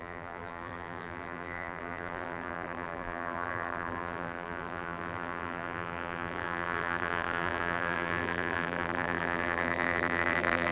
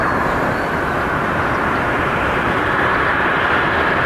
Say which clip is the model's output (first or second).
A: first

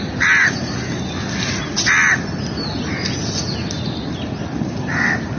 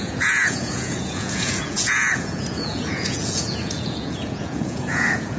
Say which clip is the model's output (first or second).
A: second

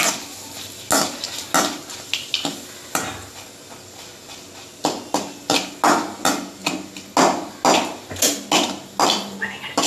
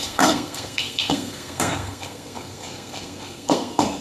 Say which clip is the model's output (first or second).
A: second